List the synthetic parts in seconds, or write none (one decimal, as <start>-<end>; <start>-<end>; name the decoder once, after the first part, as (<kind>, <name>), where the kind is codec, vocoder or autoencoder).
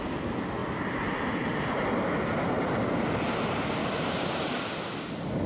3.8-4.5 (vocoder, BigVGAN v2)